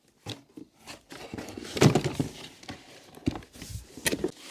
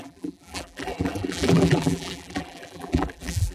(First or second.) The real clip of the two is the first